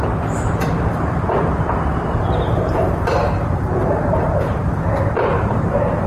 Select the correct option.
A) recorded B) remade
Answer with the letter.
B